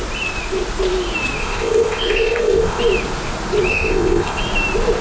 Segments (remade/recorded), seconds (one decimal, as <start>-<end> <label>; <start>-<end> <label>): 0.0-1.4 recorded; 1.4-2.8 remade; 2.8-3.7 recorded; 3.7-4.4 remade; 4.4-5.0 recorded